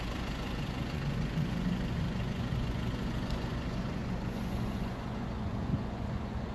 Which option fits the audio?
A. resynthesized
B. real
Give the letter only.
A